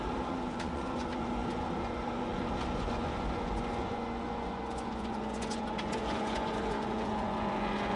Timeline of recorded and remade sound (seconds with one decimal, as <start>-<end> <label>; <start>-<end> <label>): 0.0-8.0 remade